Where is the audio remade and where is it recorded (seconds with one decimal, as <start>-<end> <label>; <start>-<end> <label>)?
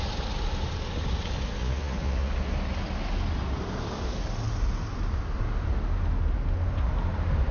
0.0-1.6 recorded; 1.6-2.3 remade; 2.3-7.5 recorded